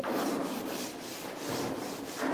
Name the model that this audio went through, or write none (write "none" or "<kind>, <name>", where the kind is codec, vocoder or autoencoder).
vocoder, BigVGAN v2